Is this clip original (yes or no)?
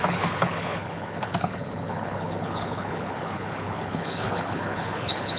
no